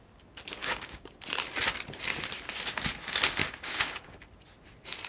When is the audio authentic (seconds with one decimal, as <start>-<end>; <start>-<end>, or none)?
0.0-0.6; 1.1-3.4; 4.2-5.1